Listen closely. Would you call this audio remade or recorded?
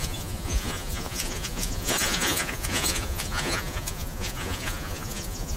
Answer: remade